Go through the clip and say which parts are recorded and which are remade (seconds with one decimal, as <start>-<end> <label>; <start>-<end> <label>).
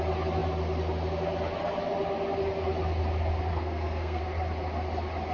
0.0-3.5 recorded; 3.5-4.2 remade; 4.2-5.3 recorded